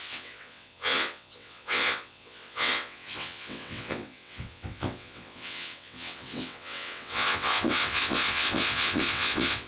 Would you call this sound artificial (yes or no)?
yes